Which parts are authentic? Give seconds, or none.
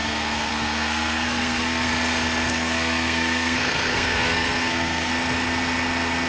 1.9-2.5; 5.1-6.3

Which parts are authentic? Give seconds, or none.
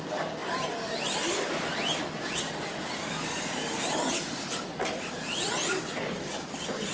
0.0-6.9